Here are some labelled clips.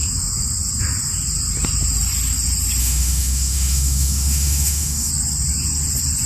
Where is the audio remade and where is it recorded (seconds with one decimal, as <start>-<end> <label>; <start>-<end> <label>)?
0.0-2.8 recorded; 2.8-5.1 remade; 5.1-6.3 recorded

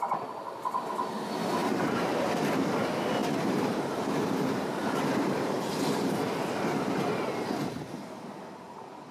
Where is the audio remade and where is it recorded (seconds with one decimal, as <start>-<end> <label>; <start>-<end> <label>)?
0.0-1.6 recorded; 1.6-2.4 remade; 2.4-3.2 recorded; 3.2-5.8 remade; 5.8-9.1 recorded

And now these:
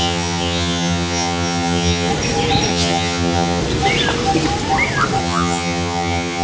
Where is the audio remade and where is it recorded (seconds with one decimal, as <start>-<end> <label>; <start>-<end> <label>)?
0.0-2.1 remade; 2.1-2.7 recorded; 2.7-3.6 remade; 3.6-5.2 recorded; 5.2-6.4 remade